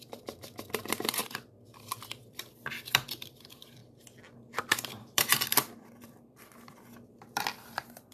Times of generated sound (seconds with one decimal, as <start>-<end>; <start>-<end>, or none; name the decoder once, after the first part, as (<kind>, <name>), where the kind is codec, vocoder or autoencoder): 0.0-1.2 (vocoder, BigVGAN v2); 2.3-3.8; 4.5-8.1